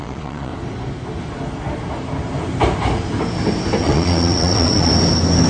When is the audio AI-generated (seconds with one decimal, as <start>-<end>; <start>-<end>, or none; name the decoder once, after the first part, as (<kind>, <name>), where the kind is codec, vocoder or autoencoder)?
0.0-0.5 (vocoder, Vocos); 3.8-4.9